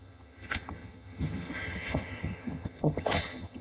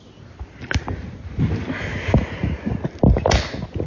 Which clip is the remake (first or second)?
first